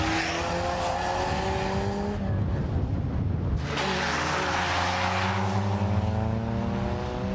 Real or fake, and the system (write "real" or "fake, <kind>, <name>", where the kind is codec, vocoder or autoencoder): real